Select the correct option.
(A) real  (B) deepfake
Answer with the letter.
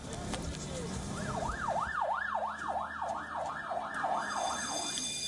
A